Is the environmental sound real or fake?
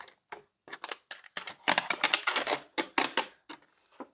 real